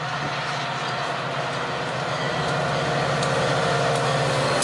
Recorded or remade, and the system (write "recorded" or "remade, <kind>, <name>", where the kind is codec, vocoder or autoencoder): recorded